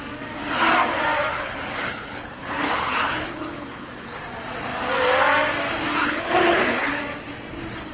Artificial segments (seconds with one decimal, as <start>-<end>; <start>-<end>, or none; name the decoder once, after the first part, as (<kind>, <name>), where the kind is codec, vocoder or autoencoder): 1.3-4.2 (codec, HILCodec); 6.0-7.0